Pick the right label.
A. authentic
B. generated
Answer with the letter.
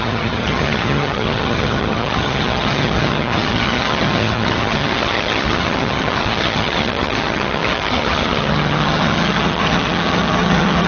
B